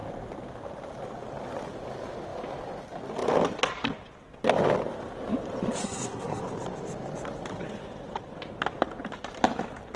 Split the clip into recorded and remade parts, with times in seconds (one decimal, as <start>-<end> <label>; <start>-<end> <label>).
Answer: 0.0-5.8 recorded; 5.8-6.4 remade; 6.4-10.0 recorded